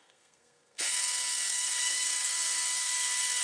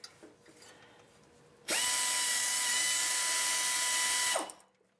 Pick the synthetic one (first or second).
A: first